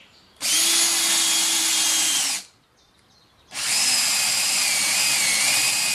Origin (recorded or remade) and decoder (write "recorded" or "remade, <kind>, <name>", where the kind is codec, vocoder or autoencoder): recorded